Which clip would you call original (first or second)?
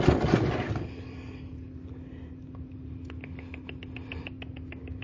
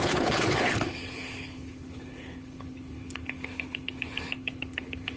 first